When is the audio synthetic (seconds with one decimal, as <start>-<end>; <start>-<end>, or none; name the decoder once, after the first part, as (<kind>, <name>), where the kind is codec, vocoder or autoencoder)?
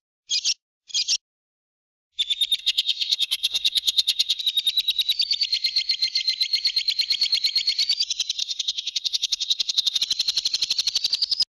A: 2.6-4.4 (codec, SNAC); 8.4-10.0